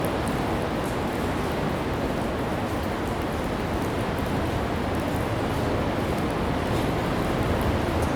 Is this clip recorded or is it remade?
recorded